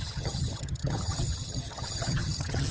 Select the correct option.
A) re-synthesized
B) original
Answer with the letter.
A